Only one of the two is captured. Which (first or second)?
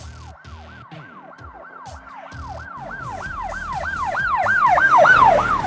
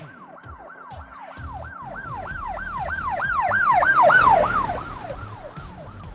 first